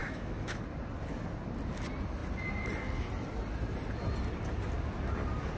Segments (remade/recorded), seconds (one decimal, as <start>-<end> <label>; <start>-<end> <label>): 0.0-0.6 remade; 0.6-5.6 recorded